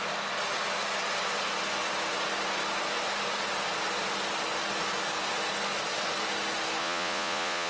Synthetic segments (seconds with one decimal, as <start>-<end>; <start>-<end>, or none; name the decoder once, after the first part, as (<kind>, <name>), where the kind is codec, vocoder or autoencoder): 6.8-7.7 (vocoder, Vocos)